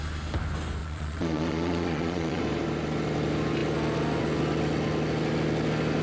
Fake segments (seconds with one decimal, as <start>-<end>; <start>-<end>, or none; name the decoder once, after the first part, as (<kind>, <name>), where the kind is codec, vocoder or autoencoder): 0.8-2.4 (vocoder, Vocos)